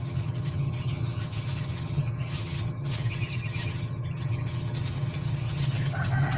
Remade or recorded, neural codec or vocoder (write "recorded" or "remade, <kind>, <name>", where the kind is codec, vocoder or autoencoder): remade, vocoder, HiFi-GAN